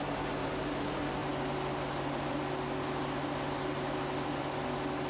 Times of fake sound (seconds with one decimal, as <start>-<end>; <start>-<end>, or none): none